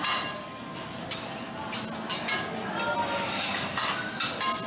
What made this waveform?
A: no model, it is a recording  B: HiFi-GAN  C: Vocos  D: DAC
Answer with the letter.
A